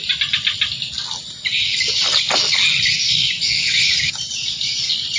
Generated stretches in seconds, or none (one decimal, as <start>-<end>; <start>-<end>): none